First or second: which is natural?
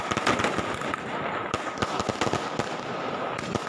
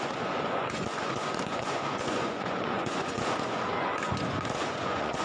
first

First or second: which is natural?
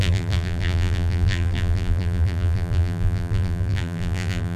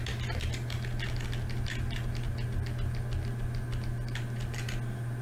second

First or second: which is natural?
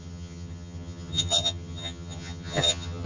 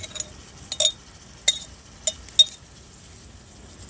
second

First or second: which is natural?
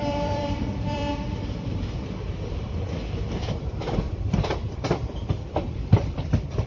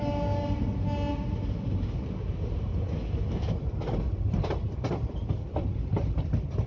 second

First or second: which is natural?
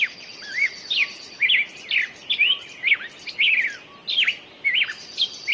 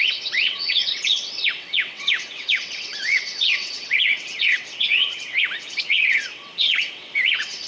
first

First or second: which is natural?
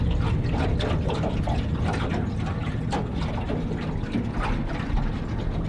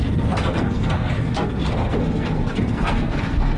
first